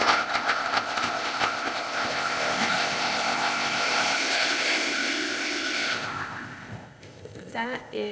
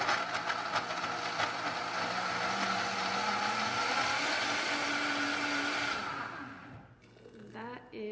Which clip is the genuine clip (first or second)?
second